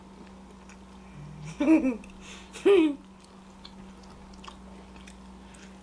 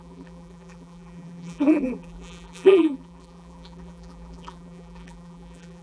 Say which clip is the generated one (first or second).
second